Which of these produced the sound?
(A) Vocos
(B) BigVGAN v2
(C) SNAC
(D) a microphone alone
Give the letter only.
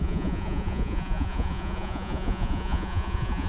A